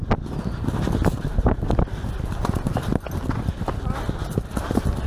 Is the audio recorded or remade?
recorded